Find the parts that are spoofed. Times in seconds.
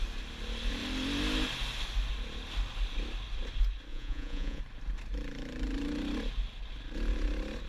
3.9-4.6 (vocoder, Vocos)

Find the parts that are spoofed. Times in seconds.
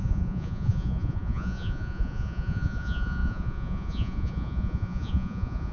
0.0-5.7 (vocoder, Vocos)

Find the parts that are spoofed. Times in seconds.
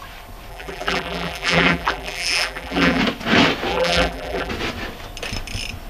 0.5-3.0 (vocoder, BigVGAN v2); 3.7-4.5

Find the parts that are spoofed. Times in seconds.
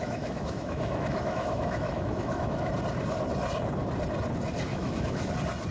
0.0-2.7 (autoencoder, DAC-VAE); 4.7-5.3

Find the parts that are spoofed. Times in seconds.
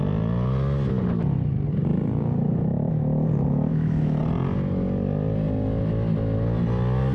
3.7-4.2 (autoencoder, DAC-VAE)